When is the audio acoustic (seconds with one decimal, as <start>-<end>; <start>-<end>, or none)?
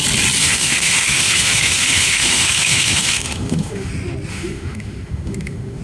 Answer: 0.0-0.4; 3.9-4.3